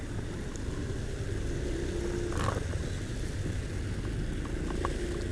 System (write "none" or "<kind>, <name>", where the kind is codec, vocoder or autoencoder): none